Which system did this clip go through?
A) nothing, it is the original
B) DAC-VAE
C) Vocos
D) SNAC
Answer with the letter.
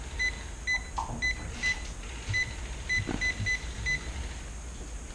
A